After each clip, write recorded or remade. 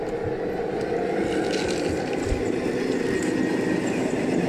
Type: recorded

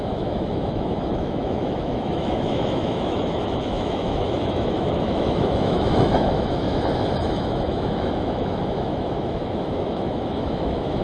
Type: remade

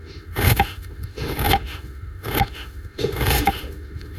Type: remade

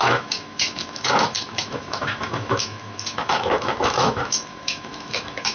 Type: remade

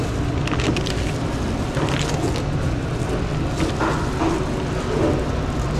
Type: recorded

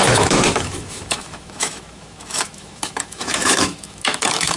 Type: remade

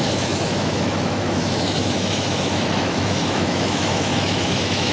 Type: remade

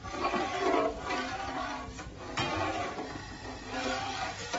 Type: recorded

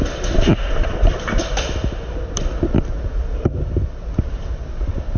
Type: recorded